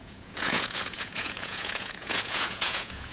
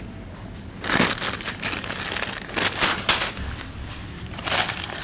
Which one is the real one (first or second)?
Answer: second